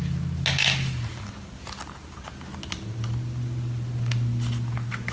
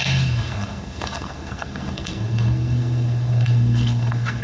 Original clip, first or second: first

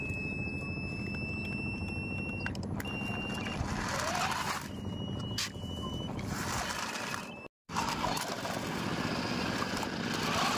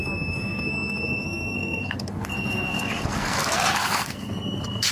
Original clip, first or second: first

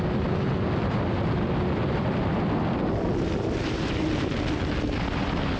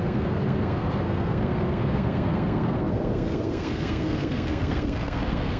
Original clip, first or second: first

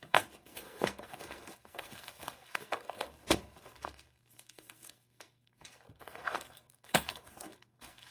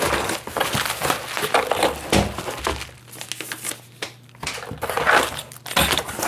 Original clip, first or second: second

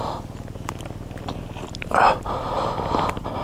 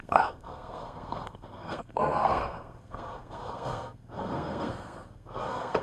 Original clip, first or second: first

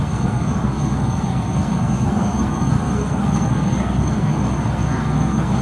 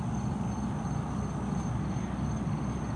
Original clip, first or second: second